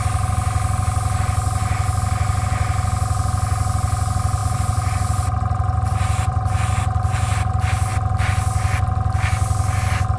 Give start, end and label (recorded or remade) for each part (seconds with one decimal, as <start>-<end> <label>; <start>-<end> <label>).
0.0-4.4 recorded; 4.4-7.9 remade; 7.9-10.2 recorded